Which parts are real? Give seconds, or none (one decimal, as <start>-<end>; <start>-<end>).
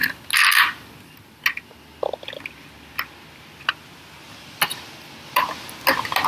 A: 0.0-6.3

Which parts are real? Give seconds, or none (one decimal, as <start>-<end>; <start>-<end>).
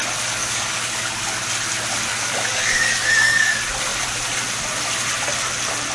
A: 0.0-0.4; 1.5-2.1; 3.5-5.9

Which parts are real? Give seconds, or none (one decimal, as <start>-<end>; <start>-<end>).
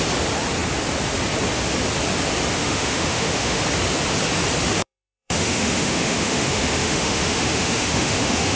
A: 0.0-2.6; 3.6-4.8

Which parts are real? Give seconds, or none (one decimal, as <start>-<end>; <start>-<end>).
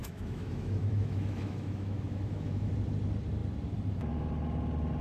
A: 2.7-5.0